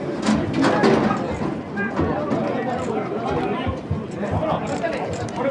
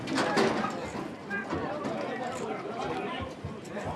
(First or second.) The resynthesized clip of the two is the second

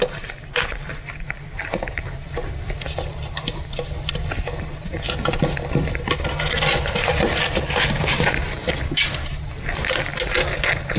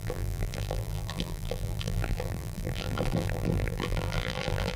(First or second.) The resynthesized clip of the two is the second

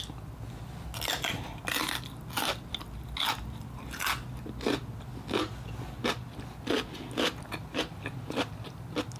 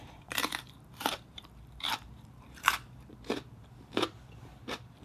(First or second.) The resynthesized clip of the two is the second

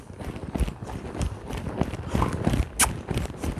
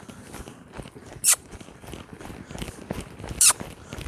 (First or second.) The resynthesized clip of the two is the second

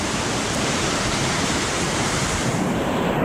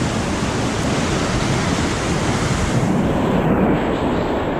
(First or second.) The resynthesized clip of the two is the first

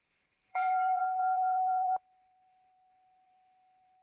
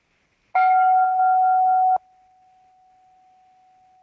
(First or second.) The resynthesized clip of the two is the first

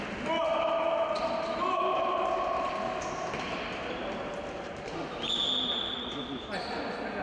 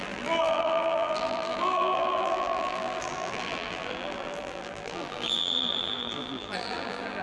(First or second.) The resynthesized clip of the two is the second